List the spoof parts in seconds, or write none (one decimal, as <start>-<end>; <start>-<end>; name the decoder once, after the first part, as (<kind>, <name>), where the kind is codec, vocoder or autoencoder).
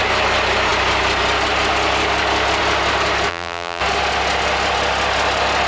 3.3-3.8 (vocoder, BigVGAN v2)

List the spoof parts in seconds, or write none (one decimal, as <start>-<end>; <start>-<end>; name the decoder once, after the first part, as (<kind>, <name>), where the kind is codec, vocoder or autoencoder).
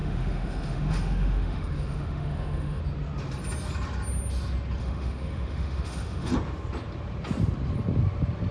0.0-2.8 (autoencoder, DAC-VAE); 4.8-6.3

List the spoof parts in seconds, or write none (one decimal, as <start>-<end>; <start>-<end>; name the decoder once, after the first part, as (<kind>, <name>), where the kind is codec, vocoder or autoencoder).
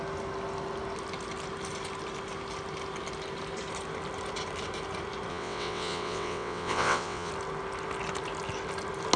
5.3-7.3 (vocoder, WaveNeXt)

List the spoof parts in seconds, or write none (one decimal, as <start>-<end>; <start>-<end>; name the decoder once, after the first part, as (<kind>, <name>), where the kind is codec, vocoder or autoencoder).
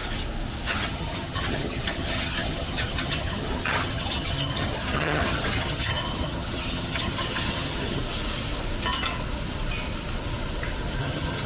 0.7-8.0 (vocoder, HiFi-GAN); 11.0-11.5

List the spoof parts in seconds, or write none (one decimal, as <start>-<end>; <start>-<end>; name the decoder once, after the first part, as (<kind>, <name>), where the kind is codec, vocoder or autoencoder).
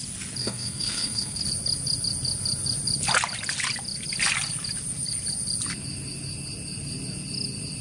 0.4-1.4 (codec, SNAC)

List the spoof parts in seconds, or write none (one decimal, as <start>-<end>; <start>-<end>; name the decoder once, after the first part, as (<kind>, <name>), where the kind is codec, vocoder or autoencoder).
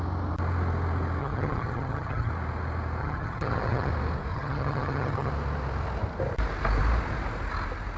1.2-2.3 (vocoder, HiFi-GAN); 3.0-3.9; 4.3-5.3